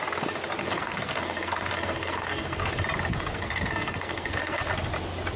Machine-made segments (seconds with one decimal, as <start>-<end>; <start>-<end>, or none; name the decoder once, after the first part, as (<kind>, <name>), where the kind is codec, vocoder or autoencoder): 0.6-2.7 (codec, SNAC); 3.1-4.6

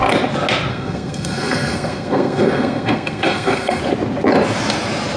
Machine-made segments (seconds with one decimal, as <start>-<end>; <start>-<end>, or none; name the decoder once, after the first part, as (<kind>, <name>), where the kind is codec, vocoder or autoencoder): 0.7-3.8 (codec, SNAC)

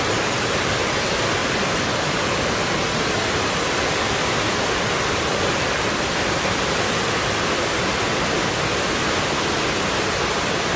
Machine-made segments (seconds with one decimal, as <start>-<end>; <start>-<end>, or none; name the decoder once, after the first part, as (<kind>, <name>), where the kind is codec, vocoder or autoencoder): none

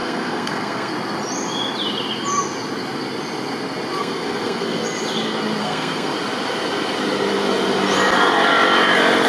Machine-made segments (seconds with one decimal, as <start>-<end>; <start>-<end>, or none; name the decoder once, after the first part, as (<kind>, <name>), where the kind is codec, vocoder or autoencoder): 0.0-0.9 (codec, SNAC); 4.0-4.8; 5.6-6.1